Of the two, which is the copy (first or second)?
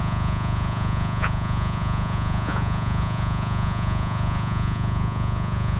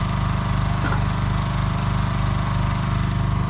first